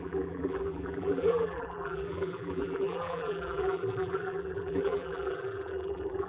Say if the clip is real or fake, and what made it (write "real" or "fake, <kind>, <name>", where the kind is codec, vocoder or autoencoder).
fake, vocoder, BigVGAN v2